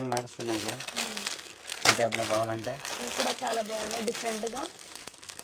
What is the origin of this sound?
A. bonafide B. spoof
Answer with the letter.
B